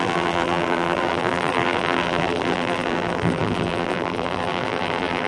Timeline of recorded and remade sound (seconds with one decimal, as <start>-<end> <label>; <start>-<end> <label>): 0.0-5.3 remade